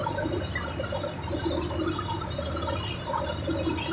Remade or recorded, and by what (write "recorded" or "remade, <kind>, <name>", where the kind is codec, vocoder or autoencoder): recorded